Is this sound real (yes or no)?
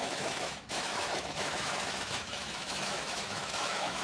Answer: no